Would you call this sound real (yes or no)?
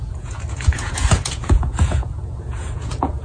no